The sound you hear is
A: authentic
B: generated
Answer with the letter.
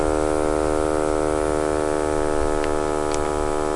A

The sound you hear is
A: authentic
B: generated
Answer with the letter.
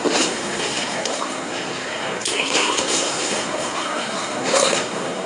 B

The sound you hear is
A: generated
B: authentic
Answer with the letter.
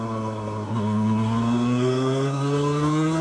A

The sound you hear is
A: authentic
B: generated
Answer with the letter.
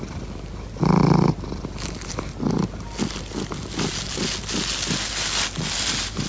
A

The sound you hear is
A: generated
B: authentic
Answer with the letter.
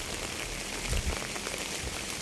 B